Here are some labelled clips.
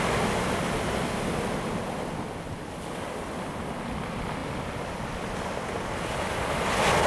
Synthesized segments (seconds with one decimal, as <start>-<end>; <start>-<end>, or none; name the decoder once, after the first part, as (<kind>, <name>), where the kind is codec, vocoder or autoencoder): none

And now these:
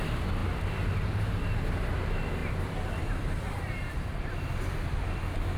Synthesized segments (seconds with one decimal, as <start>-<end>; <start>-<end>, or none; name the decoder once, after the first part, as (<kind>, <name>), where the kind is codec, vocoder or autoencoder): 2.4-4.3 (vocoder, BigVGAN v2)

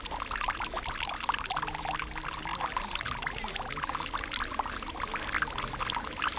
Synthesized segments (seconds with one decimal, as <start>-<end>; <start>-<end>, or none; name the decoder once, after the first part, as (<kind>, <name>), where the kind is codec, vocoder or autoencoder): none

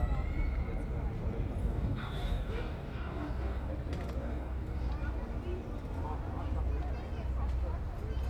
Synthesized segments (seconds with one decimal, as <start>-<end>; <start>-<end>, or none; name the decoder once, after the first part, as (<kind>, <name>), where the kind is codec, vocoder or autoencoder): 1.6-3.7 (codec, DAC); 4.2-4.9

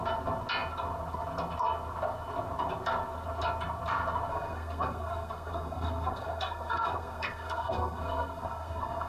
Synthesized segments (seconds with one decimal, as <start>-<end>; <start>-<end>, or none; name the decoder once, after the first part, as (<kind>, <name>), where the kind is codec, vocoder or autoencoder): 4.3-9.1 (codec, SNAC)

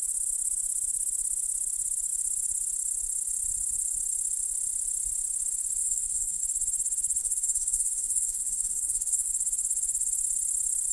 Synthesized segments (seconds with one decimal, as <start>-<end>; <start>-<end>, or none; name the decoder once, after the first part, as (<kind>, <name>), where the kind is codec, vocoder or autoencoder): 5.8-6.4 (codec, DAC); 7.2-9.3

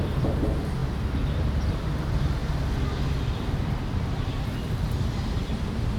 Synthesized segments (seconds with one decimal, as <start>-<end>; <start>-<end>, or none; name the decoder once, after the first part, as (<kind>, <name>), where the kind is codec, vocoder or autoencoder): 0.0-0.8 (vocoder, BigVGAN v2); 1.7-2.4; 5.3-6.0